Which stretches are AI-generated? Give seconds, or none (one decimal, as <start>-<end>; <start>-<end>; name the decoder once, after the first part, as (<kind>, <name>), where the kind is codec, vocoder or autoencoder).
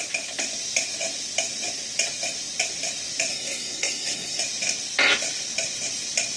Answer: 3.3-4.4 (codec, SNAC)